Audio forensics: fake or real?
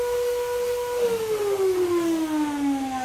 real